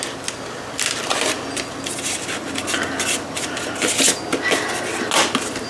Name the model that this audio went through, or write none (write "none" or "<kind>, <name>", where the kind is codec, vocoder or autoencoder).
none